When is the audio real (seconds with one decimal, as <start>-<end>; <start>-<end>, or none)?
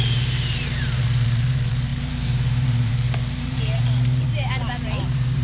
none